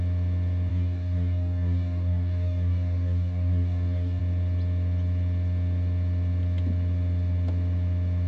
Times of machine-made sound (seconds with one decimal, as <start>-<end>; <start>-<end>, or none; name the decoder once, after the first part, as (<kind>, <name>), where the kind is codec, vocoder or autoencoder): 0.7-4.2 (codec, DAC)